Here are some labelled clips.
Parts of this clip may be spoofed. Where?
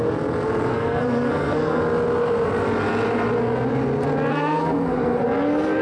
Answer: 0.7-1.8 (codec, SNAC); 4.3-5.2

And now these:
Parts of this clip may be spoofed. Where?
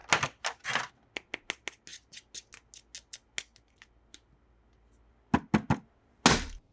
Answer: none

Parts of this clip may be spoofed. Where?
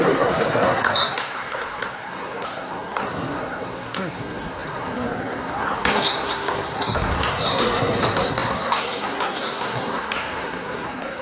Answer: 0.0-11.2 (codec, SNAC)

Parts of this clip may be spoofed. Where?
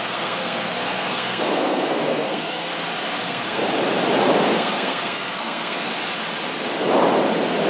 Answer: 0.0-2.7 (codec, SNAC); 3.2-3.6; 4.5-5.9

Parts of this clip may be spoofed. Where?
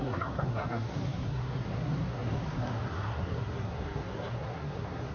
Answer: 0.0-5.1 (codec, SNAC)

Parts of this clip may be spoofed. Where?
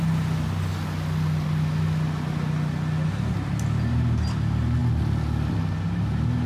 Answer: none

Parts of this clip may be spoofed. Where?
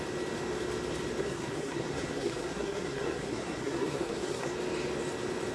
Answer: 1.2-4.5 (codec, SNAC)